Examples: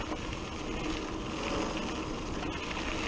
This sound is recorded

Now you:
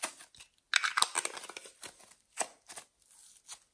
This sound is recorded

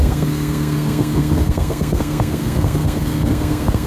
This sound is remade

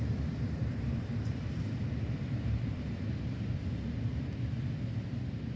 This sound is remade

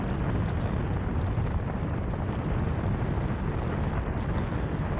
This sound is recorded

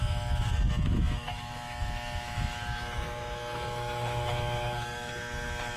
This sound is remade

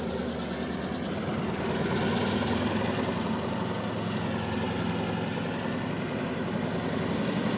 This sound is recorded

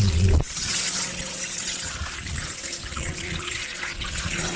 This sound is remade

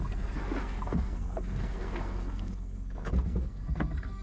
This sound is remade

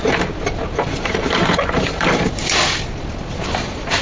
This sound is recorded